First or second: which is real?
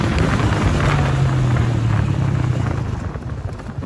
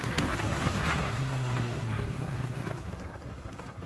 first